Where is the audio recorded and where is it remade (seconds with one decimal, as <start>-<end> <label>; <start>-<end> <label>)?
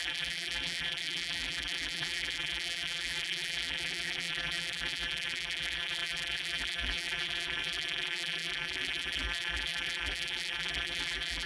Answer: 0.0-11.5 remade